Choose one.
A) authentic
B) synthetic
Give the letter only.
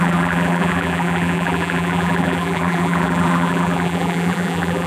B